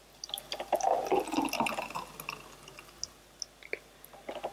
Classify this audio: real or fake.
real